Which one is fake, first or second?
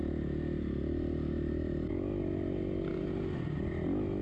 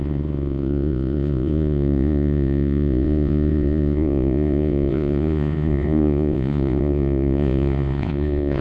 second